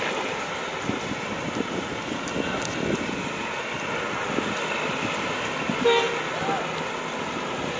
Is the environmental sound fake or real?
real